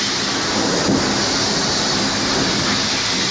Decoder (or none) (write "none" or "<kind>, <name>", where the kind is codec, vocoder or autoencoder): none